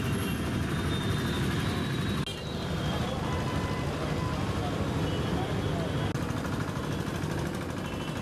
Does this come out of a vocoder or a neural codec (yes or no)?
no